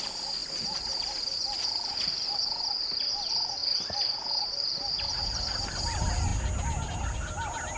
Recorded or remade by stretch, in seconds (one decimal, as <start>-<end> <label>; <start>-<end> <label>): 0.0-7.8 recorded